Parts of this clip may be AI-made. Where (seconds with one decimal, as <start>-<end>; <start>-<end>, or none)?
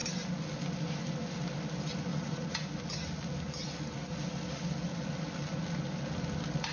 2.1-2.7